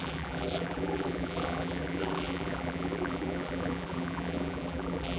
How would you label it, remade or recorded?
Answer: remade